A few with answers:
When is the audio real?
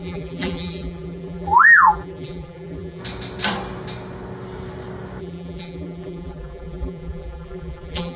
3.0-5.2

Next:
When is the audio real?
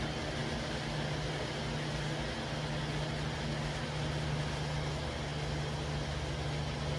0.0-7.0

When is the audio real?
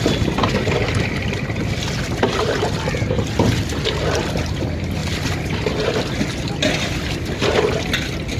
0.0-8.4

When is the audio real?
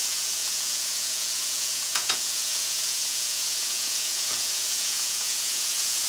none